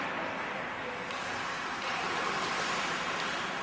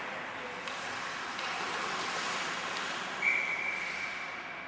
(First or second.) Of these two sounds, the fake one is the second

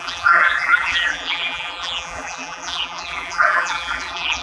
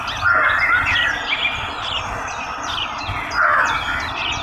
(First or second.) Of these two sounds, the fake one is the first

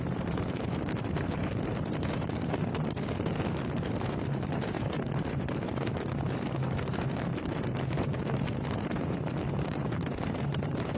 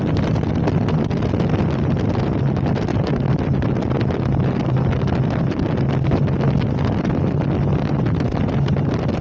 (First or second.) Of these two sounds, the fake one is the first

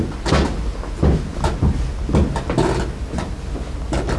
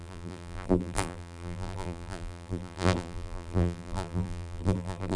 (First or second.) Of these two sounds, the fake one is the second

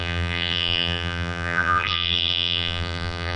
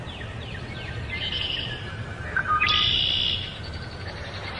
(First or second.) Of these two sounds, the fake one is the first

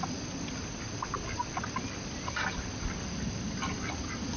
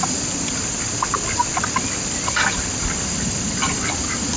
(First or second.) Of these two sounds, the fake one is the second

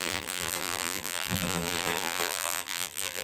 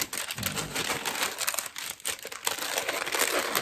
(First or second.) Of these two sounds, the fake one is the first